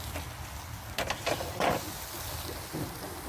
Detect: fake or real real